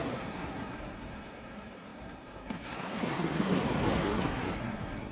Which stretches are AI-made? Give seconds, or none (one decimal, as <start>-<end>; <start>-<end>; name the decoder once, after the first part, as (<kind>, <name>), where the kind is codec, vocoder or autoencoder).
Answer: 0.0-5.1 (codec, SNAC)

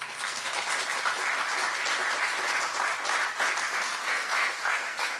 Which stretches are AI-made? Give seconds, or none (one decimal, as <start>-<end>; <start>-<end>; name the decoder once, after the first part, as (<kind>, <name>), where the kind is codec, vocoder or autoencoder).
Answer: 0.0-0.5 (codec, SNAC); 3.6-5.2

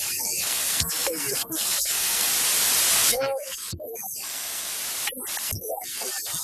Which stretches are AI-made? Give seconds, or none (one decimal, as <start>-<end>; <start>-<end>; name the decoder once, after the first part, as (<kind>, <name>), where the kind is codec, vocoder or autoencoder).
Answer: 0.0-2.3 (codec, SNAC); 2.9-4.7; 5.4-6.4

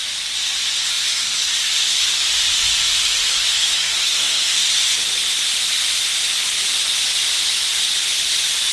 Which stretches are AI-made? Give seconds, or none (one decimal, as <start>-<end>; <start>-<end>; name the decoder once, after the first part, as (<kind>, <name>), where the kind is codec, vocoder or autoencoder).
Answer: 0.8-2.2 (codec, SNAC); 3.3-4.6

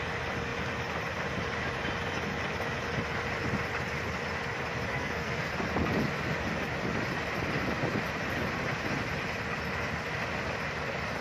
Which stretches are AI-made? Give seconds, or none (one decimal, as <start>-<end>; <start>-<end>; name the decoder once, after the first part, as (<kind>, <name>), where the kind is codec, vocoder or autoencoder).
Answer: 4.9-5.5 (codec, SNAC)

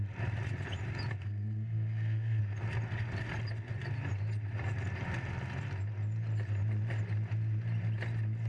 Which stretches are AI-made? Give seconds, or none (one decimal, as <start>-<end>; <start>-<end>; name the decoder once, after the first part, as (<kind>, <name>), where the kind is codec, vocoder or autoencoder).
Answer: 1.2-2.4 (codec, SNAC)

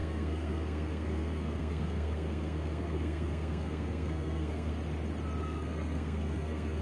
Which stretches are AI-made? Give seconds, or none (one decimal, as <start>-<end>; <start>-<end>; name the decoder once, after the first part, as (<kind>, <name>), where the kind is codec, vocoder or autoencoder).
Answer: 0.0-4.7 (codec, SNAC); 5.4-6.8

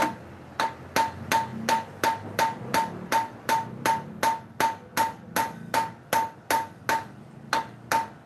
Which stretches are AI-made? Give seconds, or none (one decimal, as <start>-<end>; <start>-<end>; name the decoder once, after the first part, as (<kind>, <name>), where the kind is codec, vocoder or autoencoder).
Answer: none